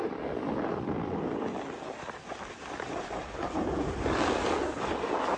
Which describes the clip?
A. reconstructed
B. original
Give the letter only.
B